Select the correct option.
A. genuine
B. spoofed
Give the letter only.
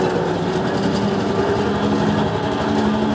A